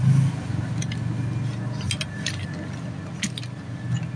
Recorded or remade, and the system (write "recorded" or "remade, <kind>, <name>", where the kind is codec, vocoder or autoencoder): recorded